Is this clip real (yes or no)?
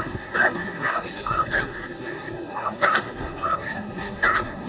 no